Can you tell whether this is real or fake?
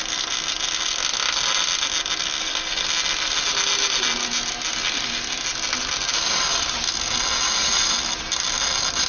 real